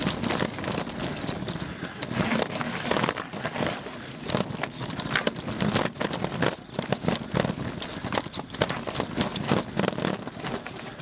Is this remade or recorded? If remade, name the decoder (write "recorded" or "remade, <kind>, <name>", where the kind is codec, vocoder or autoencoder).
recorded